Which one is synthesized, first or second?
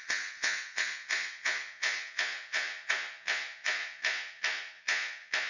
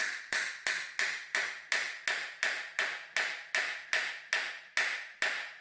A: first